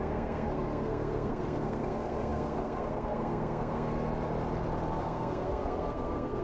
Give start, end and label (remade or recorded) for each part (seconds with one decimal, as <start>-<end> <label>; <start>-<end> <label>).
0.0-3.9 remade; 3.9-5.0 recorded; 5.0-6.4 remade